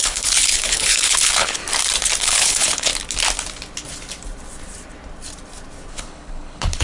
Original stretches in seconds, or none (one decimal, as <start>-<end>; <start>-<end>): 1.6-2.2; 2.9-5.9